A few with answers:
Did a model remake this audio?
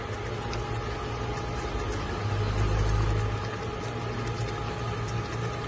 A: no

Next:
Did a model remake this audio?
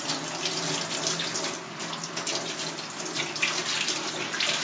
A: no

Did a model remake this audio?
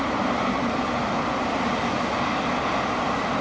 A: no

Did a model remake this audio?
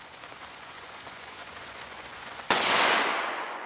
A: yes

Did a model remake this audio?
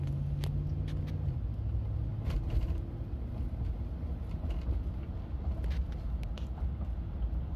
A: no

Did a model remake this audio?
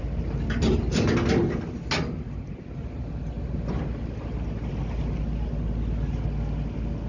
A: no